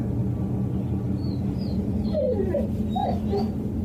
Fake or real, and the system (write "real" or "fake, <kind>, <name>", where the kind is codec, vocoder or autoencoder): real